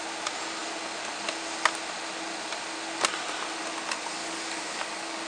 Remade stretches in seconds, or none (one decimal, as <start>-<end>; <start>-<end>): 4.2-5.3